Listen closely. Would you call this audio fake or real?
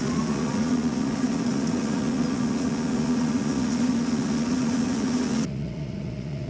fake